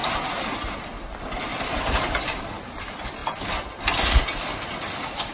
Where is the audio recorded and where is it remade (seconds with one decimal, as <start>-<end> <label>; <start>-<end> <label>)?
0.0-5.3 recorded